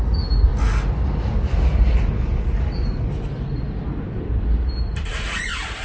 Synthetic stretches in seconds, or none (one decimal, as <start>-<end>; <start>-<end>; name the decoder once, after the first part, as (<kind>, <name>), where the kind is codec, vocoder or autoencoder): 0.0-0.5 (vocoder, BigVGAN v2); 4.0-5.8